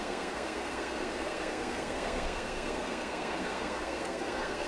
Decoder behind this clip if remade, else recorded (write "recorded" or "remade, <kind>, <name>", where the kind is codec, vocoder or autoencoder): remade, codec, SNAC